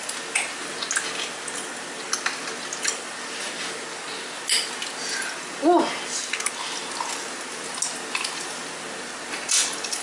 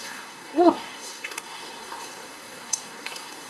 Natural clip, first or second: first